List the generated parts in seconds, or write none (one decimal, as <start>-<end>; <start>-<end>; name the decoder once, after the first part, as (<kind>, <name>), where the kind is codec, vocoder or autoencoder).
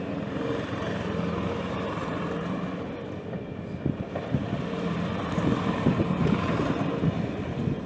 0.0-7.9 (vocoder, BigVGAN v2)